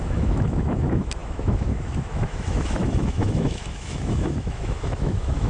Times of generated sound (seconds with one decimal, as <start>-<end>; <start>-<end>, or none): 0.0-5.5